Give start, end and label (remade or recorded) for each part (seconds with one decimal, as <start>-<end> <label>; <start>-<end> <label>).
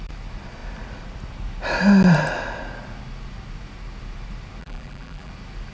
0.0-4.6 recorded; 4.6-5.3 remade; 5.3-5.7 recorded